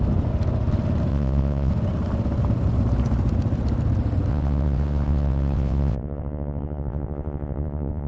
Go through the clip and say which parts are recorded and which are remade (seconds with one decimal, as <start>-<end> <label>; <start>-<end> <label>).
0.0-1.1 recorded; 1.1-1.7 remade; 1.7-4.3 recorded; 4.3-8.1 remade